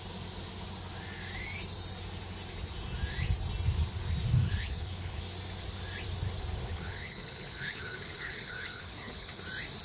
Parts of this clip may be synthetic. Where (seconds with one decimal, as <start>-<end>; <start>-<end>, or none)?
4.4-5.2; 6.7-9.4